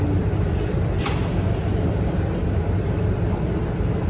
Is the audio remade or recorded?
remade